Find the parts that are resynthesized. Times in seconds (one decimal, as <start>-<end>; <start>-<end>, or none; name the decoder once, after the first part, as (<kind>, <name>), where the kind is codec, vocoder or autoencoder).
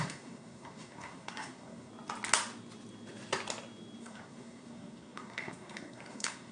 0.0-1.9 (codec, SNAC); 4.0-6.5